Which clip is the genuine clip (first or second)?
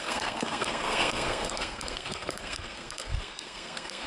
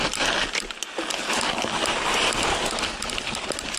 second